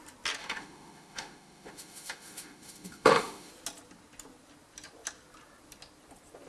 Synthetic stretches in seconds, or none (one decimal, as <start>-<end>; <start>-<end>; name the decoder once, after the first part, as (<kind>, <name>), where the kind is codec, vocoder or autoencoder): 0.4-3.5 (autoencoder, DAC-VAE)